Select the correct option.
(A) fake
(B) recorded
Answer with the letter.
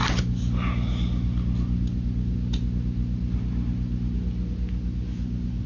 B